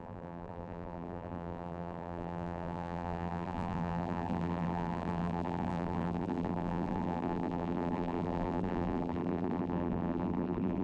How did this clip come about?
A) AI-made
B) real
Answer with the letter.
A